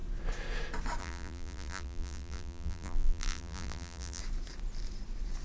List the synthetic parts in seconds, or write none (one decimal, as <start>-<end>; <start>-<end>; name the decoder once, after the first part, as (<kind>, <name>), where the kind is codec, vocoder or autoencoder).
1.0-4.2 (vocoder, BigVGAN v2)